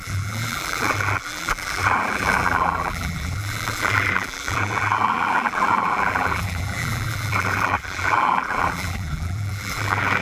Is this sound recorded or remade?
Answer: remade